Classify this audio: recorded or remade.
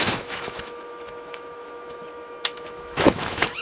remade